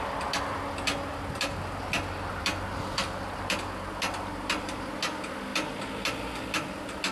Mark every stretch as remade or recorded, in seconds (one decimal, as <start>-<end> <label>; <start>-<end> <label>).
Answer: 0.0-7.1 recorded